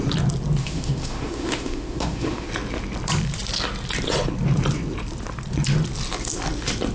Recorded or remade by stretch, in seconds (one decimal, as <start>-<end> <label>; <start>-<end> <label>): 0.0-0.6 recorded; 0.6-2.5 remade; 2.5-6.9 recorded